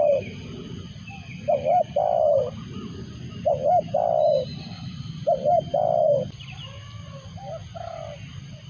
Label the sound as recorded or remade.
remade